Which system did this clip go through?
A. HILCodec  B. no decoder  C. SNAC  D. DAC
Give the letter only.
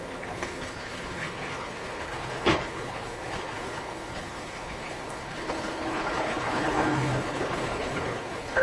A